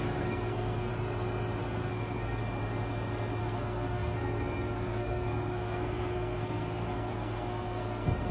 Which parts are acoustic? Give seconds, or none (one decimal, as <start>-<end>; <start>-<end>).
0.9-1.6; 2.4-3.4